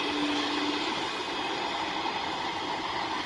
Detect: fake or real real